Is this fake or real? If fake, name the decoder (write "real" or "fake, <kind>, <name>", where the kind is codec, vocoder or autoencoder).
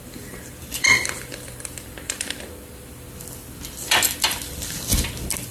fake, vocoder, BigVGAN v2